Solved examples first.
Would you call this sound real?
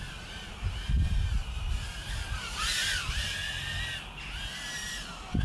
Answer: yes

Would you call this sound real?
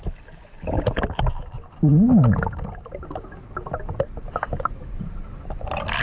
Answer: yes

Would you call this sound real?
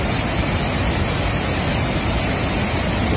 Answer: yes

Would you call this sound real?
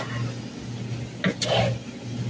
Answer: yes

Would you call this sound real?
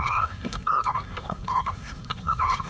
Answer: no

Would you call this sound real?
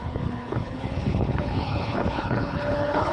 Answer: no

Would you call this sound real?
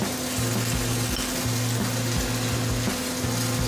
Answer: yes